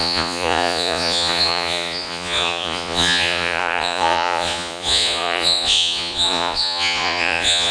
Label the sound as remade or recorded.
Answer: remade